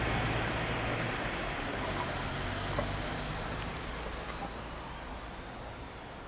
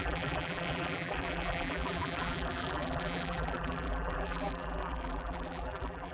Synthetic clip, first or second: second